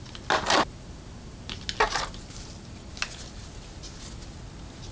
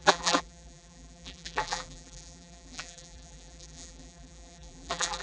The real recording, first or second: first